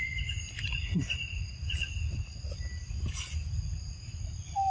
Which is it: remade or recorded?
recorded